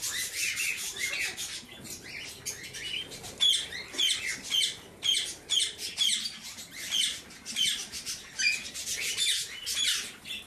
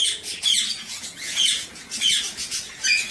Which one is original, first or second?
first